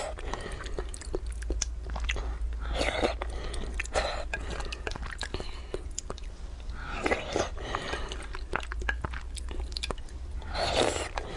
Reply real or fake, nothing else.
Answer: real